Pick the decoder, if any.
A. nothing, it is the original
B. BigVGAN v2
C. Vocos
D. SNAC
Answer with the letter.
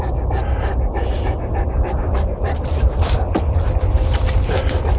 A